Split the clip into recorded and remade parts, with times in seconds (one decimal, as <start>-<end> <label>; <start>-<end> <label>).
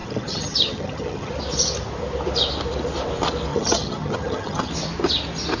0.0-1.3 remade; 1.3-3.5 recorded; 3.5-4.7 remade; 4.7-5.6 recorded